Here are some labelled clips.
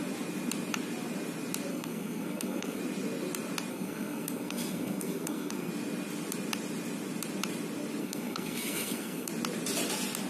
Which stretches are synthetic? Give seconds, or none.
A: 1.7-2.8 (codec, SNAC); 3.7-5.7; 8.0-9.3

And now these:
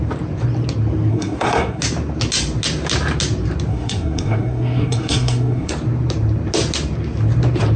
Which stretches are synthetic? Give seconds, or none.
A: 1.1-1.8 (codec, SNAC); 3.7-5.7

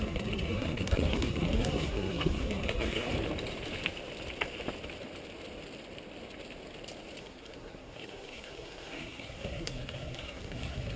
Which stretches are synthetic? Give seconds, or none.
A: 0.0-3.1 (codec, SNAC); 7.2-11.0

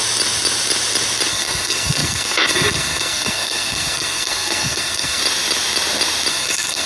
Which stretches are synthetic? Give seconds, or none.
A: 1.3-5.2 (codec, SNAC); 6.3-6.9

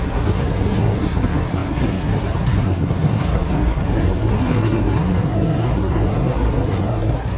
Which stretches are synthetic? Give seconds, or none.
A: 0.0-7.4 (codec, SNAC)

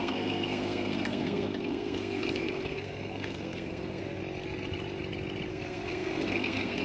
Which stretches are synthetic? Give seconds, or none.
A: 0.0-4.2 (codec, SNAC); 5.5-6.8

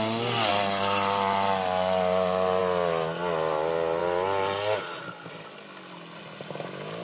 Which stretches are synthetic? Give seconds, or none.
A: none